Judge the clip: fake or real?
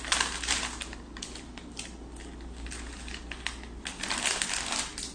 real